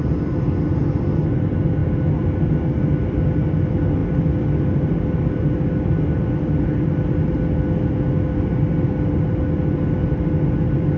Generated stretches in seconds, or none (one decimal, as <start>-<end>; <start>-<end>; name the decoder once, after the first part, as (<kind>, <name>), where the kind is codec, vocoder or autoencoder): none